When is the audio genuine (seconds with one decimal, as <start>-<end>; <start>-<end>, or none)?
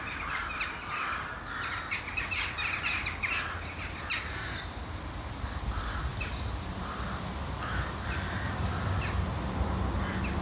0.0-6.1; 9.8-10.4